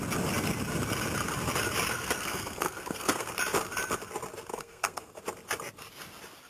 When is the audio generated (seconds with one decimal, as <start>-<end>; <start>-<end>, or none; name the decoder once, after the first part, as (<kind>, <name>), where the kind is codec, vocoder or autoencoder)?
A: 1.9-3.3 (codec, SNAC); 4.5-5.2